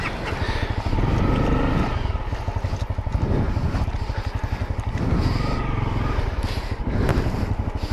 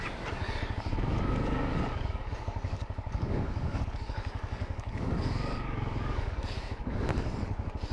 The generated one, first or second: second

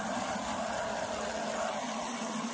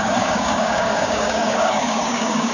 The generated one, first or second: second